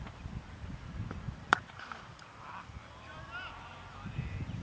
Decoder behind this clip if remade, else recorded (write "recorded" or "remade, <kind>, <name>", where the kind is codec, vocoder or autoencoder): remade, vocoder, BigVGAN v2